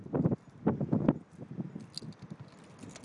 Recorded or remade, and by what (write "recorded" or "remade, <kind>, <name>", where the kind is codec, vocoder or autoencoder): recorded